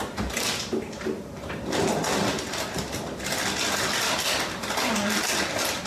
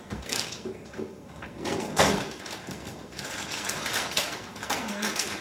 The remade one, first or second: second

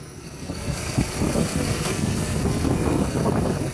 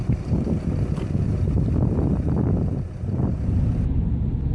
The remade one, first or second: first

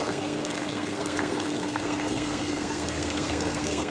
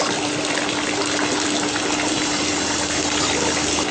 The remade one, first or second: first